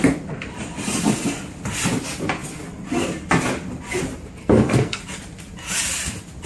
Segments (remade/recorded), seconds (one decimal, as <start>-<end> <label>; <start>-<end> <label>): 0.0-4.4 recorded; 4.4-5.0 remade; 5.0-6.5 recorded